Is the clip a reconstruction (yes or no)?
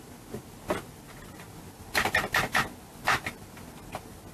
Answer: no